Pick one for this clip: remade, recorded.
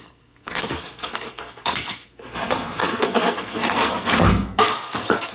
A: remade